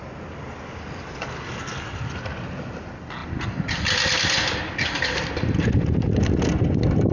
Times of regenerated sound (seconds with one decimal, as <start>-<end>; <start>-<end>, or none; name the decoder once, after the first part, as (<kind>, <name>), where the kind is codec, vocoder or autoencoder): none

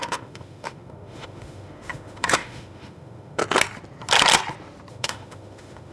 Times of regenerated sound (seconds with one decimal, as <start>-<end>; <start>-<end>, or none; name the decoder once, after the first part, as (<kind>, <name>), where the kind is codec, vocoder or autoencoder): 0.0-3.4 (autoencoder, DAC-VAE); 4.9-5.9

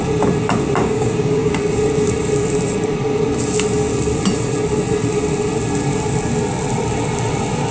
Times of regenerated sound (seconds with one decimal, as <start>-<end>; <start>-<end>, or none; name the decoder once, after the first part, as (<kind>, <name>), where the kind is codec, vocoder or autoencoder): 0.8-1.5 (codec, DAC)

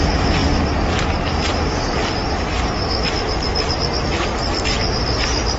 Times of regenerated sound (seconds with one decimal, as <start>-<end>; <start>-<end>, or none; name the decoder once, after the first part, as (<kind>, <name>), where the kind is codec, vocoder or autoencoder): none